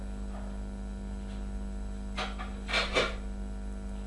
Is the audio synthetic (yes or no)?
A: no